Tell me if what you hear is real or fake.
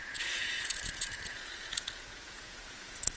fake